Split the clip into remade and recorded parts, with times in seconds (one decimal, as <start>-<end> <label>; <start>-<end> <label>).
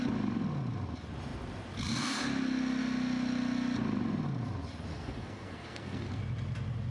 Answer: 0.0-4.9 recorded; 4.9-6.2 remade; 6.2-6.9 recorded